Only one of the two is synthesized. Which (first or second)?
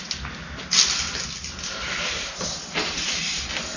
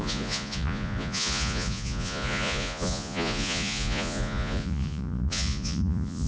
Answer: second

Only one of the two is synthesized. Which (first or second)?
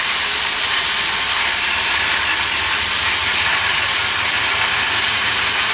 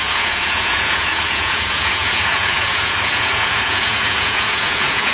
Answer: second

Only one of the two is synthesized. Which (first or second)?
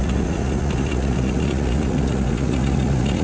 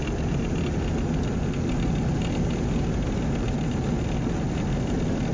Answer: first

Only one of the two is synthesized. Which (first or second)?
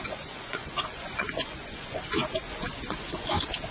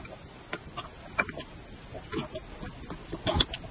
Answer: first